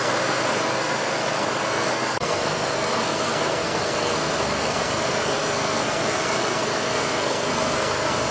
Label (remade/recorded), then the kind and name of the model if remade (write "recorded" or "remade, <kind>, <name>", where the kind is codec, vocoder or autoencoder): remade, codec, SNAC